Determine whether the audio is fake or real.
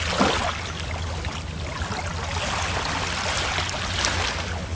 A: real